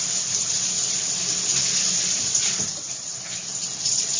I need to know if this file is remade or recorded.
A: remade